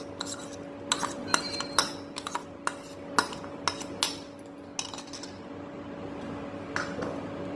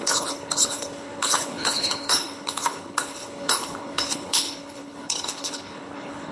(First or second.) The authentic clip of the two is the first